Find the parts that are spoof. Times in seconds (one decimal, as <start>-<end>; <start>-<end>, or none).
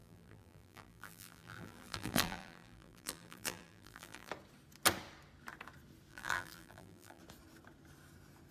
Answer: 0.0-4.3; 6.1-7.2